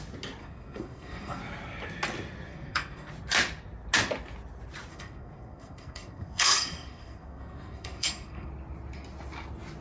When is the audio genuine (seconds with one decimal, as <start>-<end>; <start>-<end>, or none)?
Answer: 0.0-0.4; 1.4-2.5; 3.1-4.9; 8.5-9.8

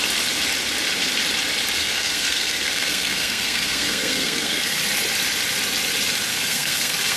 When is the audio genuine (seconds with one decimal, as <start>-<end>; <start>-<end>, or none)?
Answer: 0.0-1.8; 4.8-6.3